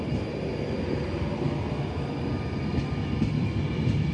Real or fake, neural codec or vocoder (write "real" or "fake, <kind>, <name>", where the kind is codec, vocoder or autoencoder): real